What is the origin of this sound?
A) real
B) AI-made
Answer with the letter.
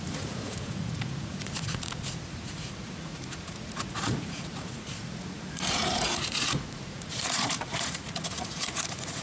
B